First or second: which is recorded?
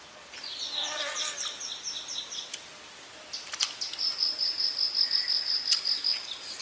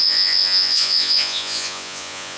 first